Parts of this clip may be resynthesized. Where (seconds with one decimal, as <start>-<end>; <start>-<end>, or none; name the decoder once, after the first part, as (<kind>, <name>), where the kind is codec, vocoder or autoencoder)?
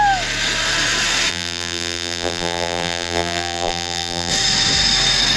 1.3-4.3 (vocoder, BigVGAN v2)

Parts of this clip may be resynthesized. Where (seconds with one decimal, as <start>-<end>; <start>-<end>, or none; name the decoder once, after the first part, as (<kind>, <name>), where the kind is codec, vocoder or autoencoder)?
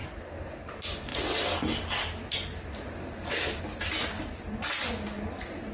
none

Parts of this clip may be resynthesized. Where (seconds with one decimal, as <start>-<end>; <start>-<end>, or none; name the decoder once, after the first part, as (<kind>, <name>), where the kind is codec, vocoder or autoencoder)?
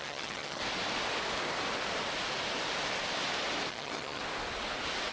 0.0-0.6 (vocoder, HiFi-GAN); 3.7-4.2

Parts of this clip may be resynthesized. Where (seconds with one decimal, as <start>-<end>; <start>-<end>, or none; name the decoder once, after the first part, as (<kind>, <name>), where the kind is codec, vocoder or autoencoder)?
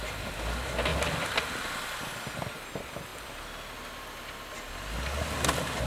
none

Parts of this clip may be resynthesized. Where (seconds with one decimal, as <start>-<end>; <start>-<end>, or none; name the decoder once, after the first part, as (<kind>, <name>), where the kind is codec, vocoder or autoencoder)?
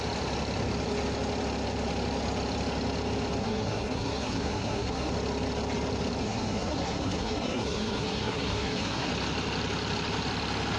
3.4-5.1 (codec, SNAC); 6.2-9.1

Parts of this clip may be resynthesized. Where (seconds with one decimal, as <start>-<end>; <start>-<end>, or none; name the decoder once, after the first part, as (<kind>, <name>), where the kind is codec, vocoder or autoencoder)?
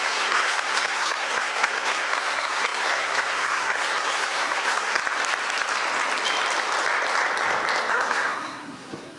0.0-5.0 (codec, SNAC); 7.9-9.2